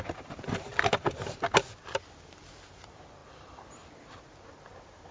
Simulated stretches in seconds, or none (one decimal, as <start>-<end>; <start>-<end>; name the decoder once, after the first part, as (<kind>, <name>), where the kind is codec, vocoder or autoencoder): none